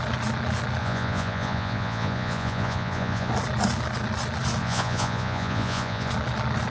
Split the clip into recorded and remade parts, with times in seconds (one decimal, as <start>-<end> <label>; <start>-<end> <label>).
0.0-0.8 recorded; 0.8-3.3 remade; 3.3-4.6 recorded; 4.6-6.1 remade; 6.1-6.7 recorded

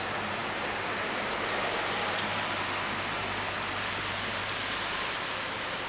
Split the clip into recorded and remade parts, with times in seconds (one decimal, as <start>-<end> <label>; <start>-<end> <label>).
0.0-5.9 remade

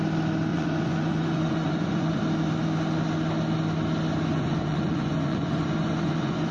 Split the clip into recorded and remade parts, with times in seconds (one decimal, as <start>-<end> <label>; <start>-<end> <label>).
0.0-0.5 recorded; 0.5-2.2 remade; 2.2-4.3 recorded; 4.3-6.5 remade

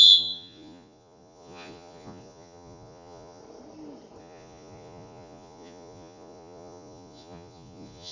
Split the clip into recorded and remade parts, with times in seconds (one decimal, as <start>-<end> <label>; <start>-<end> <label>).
0.0-3.4 remade; 3.4-4.2 recorded; 4.2-8.1 remade

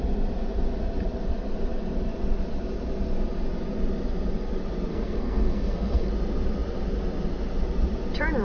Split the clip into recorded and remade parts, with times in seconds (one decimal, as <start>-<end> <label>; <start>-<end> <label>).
0.0-4.9 recorded; 4.9-6.1 remade; 6.1-8.4 recorded

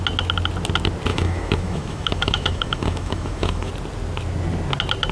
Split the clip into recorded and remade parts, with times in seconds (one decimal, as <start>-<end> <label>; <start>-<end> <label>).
0.0-1.1 recorded; 1.1-3.7 remade; 3.7-5.1 recorded